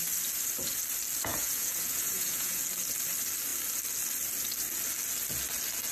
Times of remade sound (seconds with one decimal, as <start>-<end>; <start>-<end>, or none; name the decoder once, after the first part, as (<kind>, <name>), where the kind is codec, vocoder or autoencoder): 1.3-2.6 (vocoder, Vocos)